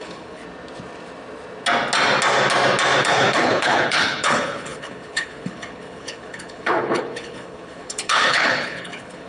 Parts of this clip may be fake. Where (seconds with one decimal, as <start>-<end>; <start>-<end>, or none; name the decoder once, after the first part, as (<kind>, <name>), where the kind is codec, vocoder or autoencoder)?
0.0-0.4 (codec, HILCodec); 3.0-9.3